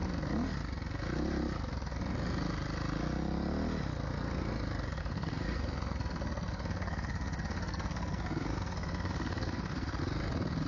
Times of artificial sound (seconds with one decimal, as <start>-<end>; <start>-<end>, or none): 5.0-10.0